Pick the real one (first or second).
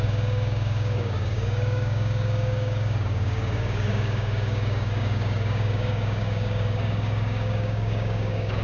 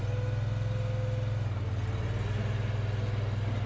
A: second